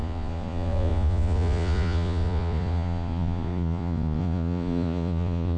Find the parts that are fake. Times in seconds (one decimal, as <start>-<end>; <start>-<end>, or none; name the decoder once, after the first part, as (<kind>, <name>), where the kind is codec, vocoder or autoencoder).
0.0-5.6 (vocoder, Vocos)